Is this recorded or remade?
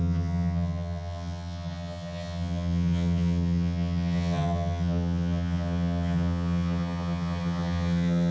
remade